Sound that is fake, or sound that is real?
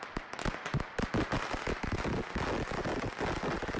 real